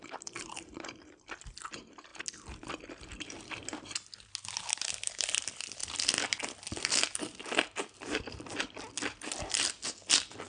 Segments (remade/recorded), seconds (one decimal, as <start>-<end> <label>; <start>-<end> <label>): 0.0-2.1 remade; 2.1-4.9 recorded; 4.9-5.8 remade; 5.8-8.2 recorded; 8.2-10.5 remade